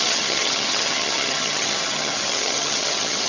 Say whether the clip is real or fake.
fake